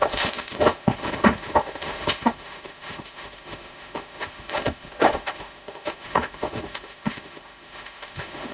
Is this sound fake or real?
fake